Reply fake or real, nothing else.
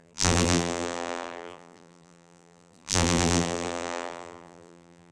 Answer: fake